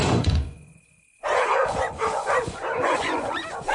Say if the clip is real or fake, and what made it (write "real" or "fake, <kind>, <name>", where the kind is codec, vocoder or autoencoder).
fake, vocoder, Vocos